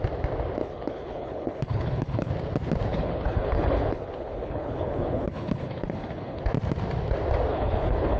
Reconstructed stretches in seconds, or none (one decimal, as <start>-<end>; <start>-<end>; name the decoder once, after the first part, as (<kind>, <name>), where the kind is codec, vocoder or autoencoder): 0.6-2.3 (codec, HILCodec); 2.9-6.4; 7.5-8.2